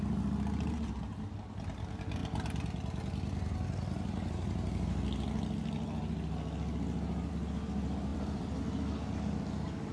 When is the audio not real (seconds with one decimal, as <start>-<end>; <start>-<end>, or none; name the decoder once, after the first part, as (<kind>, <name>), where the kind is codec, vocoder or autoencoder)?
8.1-8.6 (vocoder, BigVGAN v2)